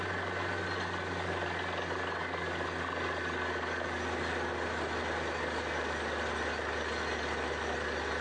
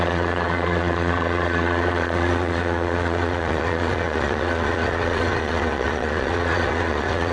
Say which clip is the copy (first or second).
second